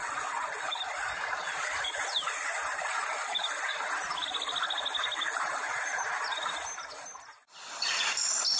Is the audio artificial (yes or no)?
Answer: no